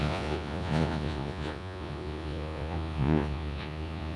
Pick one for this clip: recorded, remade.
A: remade